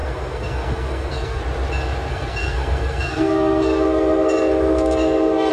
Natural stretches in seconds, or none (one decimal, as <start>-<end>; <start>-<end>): 1.4-2.1